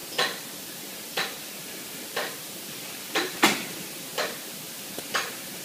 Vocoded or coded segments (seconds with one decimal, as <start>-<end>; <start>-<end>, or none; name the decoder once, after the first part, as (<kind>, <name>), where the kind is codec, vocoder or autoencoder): 0.6-4.1 (vocoder, BigVGAN v2); 4.6-5.6